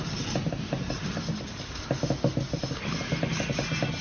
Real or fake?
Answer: real